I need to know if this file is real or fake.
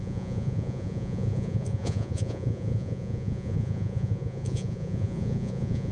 fake